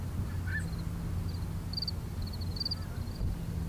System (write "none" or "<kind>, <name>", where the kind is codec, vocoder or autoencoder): none